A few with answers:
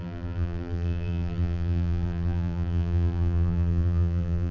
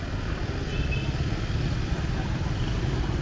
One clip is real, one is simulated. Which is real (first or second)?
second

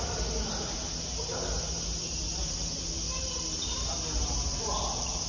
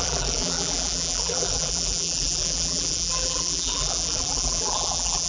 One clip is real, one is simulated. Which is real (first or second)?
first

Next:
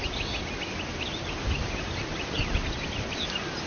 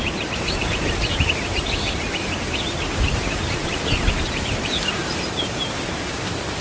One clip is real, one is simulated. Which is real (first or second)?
first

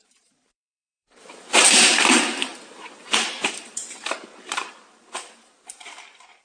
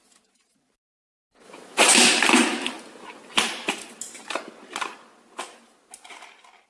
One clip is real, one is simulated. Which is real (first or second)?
second